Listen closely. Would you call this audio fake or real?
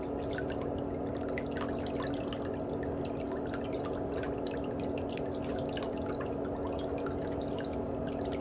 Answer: real